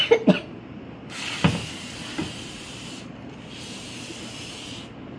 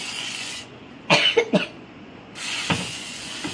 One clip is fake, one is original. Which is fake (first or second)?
second